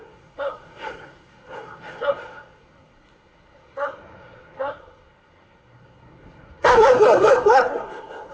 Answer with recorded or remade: remade